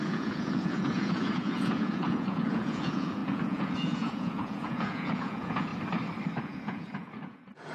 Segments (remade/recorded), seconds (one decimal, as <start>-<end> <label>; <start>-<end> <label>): 0.0-5.7 remade; 5.7-6.4 recorded; 6.4-7.7 remade